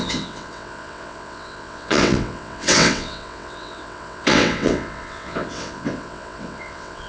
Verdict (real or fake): fake